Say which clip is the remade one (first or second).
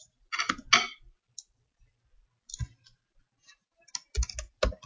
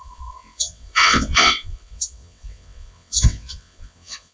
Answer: second